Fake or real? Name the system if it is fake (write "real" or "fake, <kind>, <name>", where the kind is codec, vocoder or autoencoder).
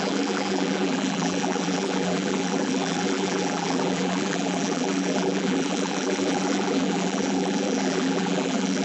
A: fake, vocoder, BigVGAN v2